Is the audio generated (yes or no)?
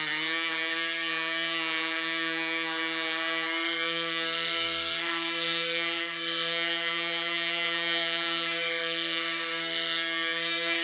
yes